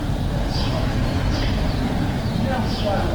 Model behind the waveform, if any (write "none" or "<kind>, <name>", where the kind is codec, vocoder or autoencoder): none